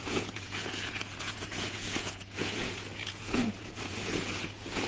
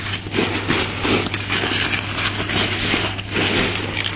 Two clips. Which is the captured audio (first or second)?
second